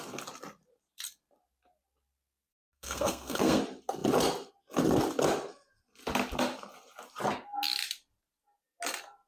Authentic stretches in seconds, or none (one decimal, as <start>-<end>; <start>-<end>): 0.0-2.5; 3.6-9.3